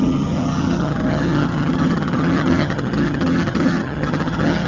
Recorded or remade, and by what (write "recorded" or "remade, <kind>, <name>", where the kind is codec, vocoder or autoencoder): remade, vocoder, HiFi-GAN